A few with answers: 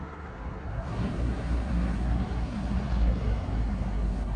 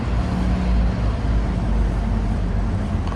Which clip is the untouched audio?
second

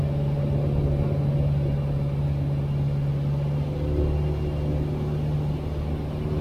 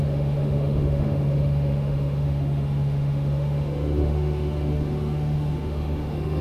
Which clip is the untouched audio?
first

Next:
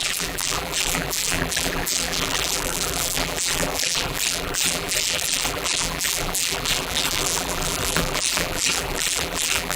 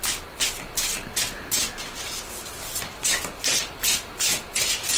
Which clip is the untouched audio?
second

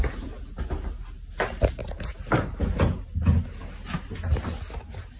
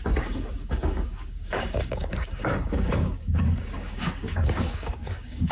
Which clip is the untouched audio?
first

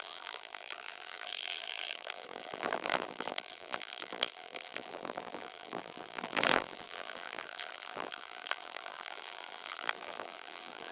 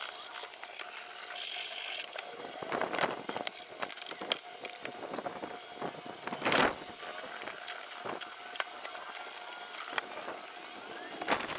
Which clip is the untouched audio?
second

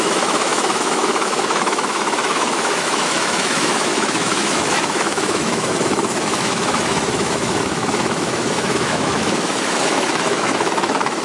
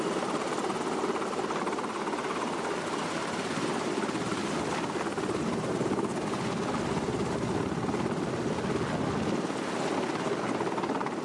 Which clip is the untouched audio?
second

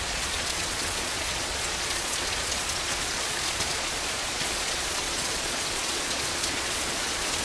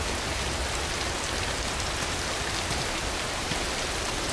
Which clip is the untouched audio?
second